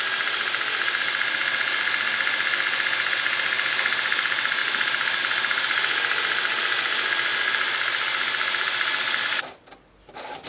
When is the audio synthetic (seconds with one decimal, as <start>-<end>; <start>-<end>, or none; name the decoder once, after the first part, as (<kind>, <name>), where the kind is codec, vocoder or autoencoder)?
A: 4.6-5.2 (vocoder, BigVGAN v2); 7.3-9.2